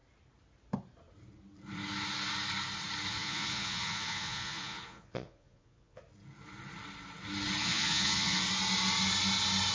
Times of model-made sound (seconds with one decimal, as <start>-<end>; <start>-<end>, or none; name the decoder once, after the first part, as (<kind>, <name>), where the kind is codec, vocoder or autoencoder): 3.1-6.0 (vocoder, Vocos); 7.6-8.4